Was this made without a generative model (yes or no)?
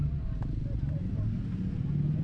yes